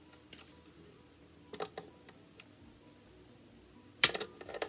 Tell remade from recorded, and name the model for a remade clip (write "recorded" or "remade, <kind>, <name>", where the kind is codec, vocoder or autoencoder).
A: recorded